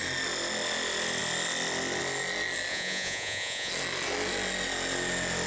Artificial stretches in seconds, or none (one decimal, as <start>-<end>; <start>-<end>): 2.7-3.7